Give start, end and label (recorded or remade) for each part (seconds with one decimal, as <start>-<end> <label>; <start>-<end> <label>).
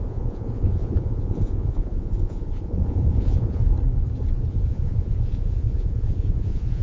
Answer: 0.0-3.6 remade; 3.6-4.5 recorded; 4.5-6.8 remade